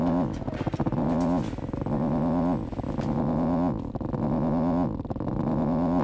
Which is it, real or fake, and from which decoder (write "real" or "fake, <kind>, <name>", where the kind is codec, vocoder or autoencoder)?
real